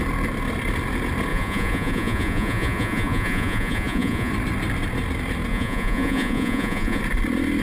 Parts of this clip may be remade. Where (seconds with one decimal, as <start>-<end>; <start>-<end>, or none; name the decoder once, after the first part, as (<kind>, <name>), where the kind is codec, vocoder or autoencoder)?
1.3-4.3 (vocoder, Vocos); 5.5-7.0